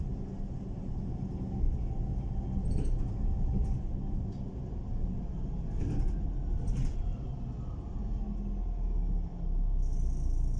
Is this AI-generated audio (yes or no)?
no